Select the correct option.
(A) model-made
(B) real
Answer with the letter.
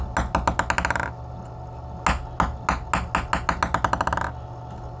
B